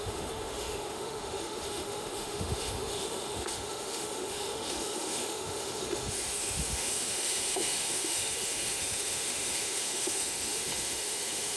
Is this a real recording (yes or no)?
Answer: no